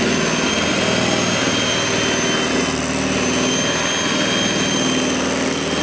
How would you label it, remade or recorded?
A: recorded